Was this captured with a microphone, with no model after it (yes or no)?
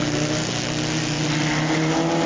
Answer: yes